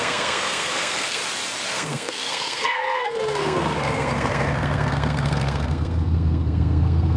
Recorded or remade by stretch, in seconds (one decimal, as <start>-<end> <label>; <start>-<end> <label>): 0.0-1.2 remade; 1.2-1.7 recorded; 1.7-7.2 remade

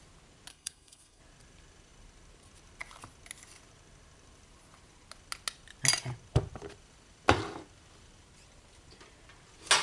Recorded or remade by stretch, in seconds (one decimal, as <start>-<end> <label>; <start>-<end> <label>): 0.0-0.5 recorded; 0.5-1.2 remade; 1.2-9.8 recorded

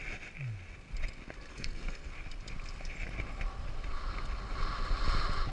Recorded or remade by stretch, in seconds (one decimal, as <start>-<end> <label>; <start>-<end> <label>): 0.0-1.5 recorded; 1.5-2.1 remade; 2.1-5.5 recorded

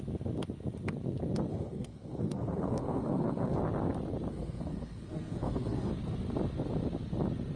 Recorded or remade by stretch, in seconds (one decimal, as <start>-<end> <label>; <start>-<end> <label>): 0.0-1.5 recorded; 1.5-3.6 remade; 3.6-4.3 recorded; 4.3-5.9 remade; 5.9-7.6 recorded

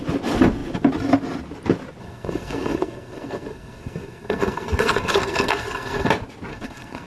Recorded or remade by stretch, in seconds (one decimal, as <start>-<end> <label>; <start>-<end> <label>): 0.0-2.0 recorded; 2.0-6.1 remade; 6.1-6.5 recorded; 6.5-7.1 remade

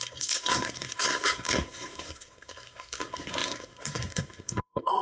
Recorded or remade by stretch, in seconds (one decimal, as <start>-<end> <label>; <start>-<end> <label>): 0.0-5.0 remade